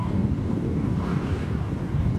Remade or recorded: remade